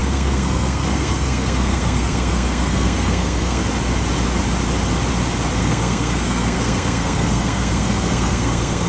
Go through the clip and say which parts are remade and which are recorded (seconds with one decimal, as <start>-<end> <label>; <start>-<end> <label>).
0.0-3.6 remade; 3.6-5.6 recorded; 5.6-8.9 remade